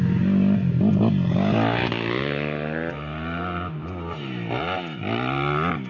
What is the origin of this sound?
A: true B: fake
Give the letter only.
A